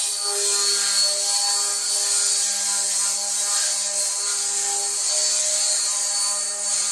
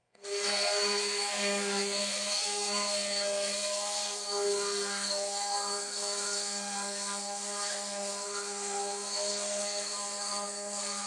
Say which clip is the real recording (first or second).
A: first